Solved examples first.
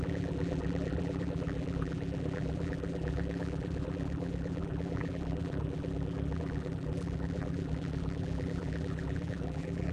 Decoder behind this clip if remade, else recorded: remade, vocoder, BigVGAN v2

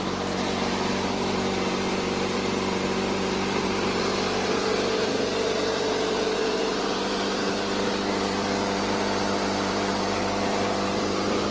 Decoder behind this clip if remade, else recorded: remade, vocoder, BigVGAN v2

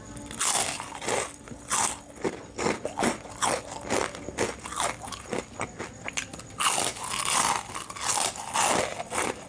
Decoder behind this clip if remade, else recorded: recorded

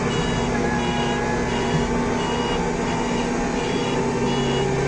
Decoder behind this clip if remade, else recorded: recorded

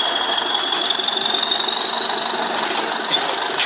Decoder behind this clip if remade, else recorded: recorded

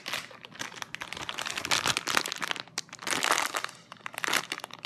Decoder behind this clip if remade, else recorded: recorded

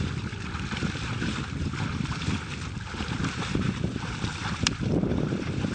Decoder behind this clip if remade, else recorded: remade, vocoder, BigVGAN v2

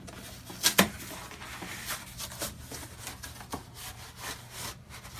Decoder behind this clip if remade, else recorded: recorded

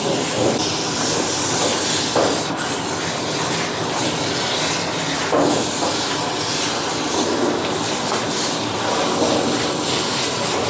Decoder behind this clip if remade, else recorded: recorded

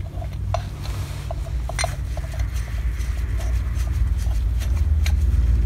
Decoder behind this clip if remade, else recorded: recorded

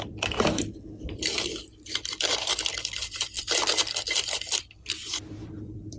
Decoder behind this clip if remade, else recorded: remade, vocoder, BigVGAN v2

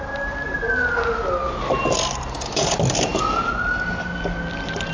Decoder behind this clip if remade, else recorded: recorded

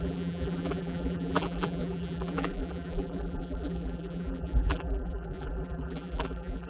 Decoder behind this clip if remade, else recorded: remade, vocoder, BigVGAN v2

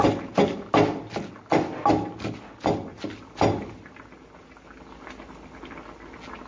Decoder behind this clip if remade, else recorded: recorded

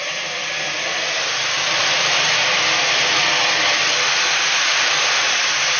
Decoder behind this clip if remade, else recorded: remade, vocoder, BigVGAN v2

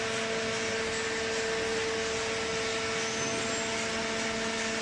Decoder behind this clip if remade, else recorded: recorded